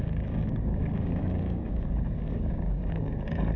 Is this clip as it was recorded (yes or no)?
no